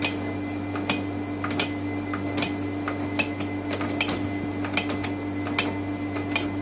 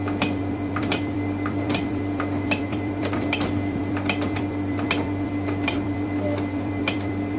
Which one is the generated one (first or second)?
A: second